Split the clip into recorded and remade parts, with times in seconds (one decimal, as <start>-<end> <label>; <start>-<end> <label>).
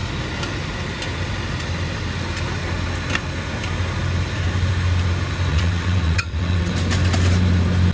0.0-5.5 recorded; 5.5-6.7 remade; 6.7-7.9 recorded